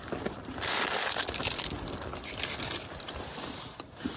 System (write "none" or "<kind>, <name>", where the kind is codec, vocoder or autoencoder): none